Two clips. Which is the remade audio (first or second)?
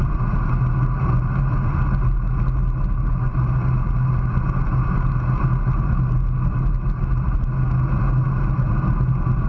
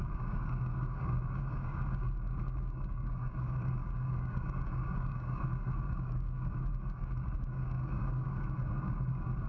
second